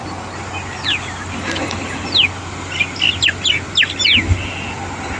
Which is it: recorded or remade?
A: recorded